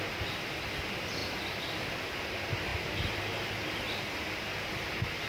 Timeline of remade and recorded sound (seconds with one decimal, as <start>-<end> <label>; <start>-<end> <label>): 0.0-5.3 recorded